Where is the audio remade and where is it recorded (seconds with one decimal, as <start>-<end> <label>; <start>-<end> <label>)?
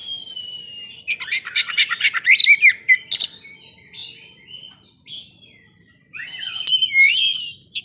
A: 0.0-7.8 recorded